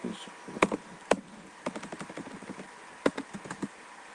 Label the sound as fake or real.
real